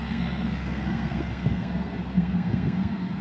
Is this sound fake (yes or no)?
yes